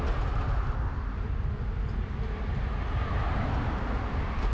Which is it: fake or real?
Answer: real